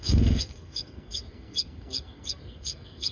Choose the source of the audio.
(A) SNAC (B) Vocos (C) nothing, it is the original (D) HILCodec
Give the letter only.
A